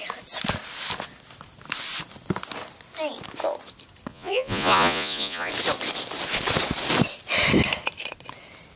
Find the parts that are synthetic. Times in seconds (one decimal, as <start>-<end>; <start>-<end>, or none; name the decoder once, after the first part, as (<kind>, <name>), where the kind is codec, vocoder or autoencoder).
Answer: 4.1-5.5 (vocoder, Vocos)